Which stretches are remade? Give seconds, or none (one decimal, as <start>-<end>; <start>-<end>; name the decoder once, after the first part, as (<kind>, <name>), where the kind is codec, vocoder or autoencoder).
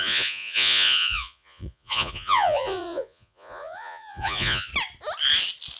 0.0-4.7 (vocoder, Vocos)